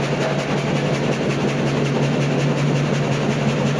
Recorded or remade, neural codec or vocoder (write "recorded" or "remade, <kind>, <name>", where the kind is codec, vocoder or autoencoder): recorded